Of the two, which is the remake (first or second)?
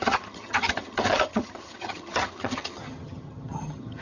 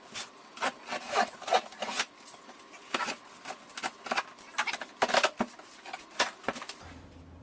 first